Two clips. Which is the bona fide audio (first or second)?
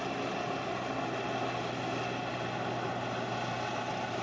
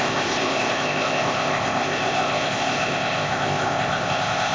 first